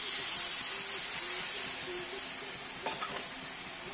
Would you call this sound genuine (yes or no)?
yes